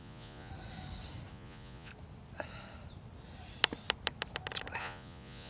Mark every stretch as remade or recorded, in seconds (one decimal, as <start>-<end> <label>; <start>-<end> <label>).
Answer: 0.0-0.5 remade; 0.5-1.3 recorded; 1.3-1.9 remade; 1.9-4.8 recorded; 4.8-5.5 remade